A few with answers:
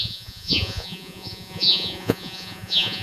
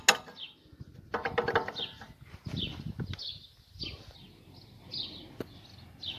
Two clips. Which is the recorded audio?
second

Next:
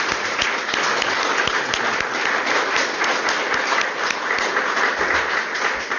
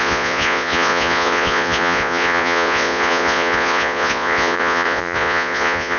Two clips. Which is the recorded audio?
first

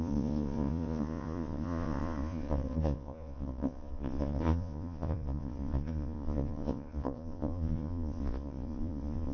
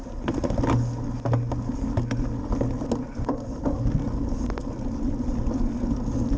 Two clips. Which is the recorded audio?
second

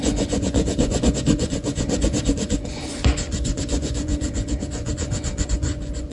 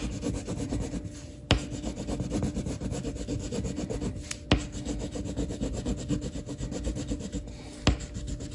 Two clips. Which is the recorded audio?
second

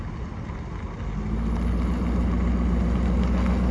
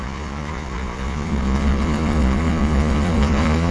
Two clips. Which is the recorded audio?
first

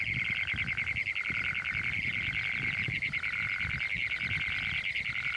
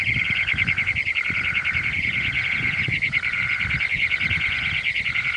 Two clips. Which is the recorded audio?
first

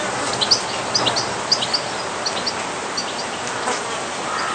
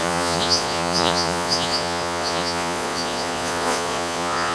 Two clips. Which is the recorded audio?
first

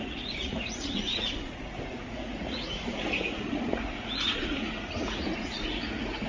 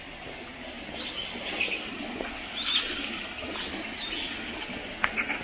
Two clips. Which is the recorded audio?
second